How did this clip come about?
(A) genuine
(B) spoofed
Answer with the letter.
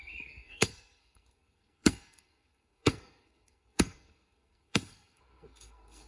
B